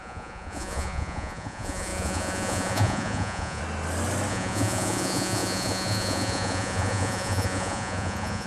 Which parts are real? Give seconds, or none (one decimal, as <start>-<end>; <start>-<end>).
3.6-4.3